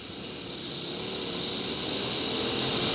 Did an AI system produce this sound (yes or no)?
no